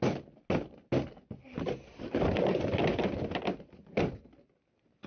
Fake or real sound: real